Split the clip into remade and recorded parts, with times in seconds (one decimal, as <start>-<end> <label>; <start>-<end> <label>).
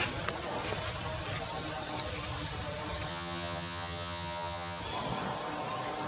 0.0-3.1 recorded; 3.1-4.8 remade; 4.8-6.1 recorded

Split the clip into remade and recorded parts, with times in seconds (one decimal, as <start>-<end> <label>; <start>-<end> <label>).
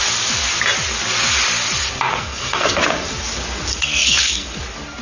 0.0-2.1 recorded; 2.1-2.8 remade; 2.8-3.7 recorded; 3.7-4.6 remade; 4.6-5.0 recorded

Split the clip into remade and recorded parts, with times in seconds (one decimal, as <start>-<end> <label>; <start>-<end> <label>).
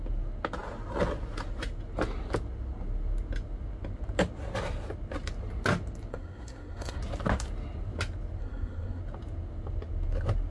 0.0-6.1 recorded; 6.1-7.0 remade; 7.0-8.4 recorded; 8.4-9.0 remade; 9.0-10.5 recorded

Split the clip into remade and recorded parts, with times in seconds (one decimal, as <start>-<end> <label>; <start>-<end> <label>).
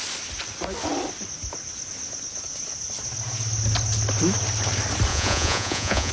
0.0-5.1 recorded; 5.1-6.1 remade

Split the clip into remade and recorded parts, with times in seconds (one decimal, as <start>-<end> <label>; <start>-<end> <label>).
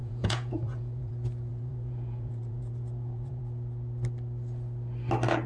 0.0-1.1 remade; 1.1-1.5 recorded; 1.5-3.4 remade; 3.4-5.5 recorded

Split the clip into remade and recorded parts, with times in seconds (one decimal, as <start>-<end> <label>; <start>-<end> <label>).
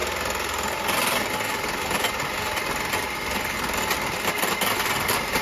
0.0-5.4 recorded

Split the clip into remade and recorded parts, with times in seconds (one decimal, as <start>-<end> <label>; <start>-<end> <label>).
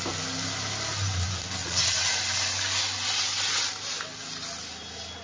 0.0-1.6 recorded; 1.6-2.1 remade; 2.1-5.2 recorded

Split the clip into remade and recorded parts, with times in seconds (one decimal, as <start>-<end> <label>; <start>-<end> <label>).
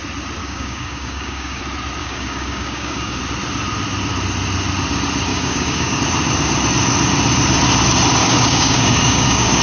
0.0-0.4 recorded; 0.4-1.6 remade; 1.6-2.0 recorded; 2.0-3.2 remade; 3.2-5.3 recorded; 5.3-6.0 remade; 6.0-8.2 recorded; 8.2-9.6 remade